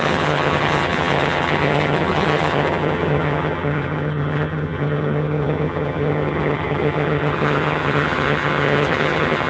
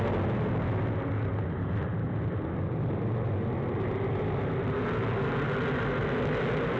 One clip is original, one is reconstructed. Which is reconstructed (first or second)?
first